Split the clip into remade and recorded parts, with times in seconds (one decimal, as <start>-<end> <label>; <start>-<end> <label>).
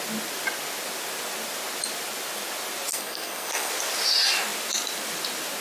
0.0-2.9 recorded; 2.9-3.7 remade; 3.7-5.6 recorded